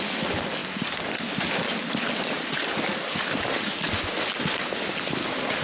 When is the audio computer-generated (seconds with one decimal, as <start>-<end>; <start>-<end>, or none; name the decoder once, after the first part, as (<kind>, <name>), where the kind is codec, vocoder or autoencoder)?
none

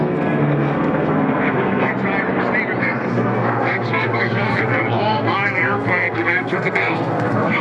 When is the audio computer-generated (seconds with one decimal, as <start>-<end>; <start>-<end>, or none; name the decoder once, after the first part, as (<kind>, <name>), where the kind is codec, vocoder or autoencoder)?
0.0-1.9 (codec, SNAC); 2.8-7.6

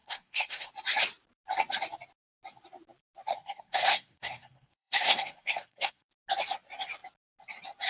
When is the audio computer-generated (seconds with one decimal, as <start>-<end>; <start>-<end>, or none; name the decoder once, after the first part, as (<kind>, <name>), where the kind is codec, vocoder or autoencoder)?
0.0-0.7 (codec, SNAC); 3.3-6.1

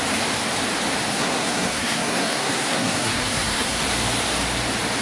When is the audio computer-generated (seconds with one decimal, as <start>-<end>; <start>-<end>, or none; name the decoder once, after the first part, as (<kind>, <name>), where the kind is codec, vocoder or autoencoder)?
1.1-3.8 (codec, SNAC)

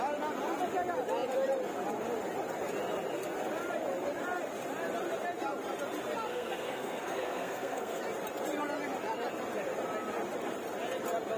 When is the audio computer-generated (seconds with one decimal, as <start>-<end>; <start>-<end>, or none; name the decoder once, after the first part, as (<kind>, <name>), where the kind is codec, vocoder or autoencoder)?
6.3-8.0 (codec, SNAC)

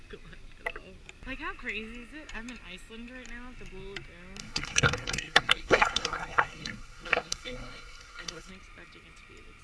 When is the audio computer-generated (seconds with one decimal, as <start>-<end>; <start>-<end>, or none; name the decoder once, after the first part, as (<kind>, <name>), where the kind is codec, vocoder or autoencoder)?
4.4-8.5 (codec, SNAC)